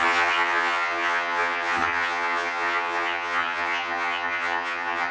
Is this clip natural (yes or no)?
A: no